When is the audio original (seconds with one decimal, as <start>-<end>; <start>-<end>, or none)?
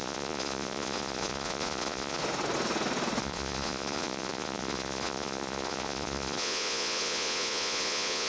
2.2-3.2